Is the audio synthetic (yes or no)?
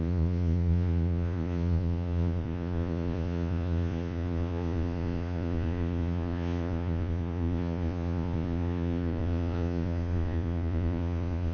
yes